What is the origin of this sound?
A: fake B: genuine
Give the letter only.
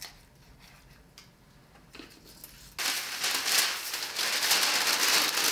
B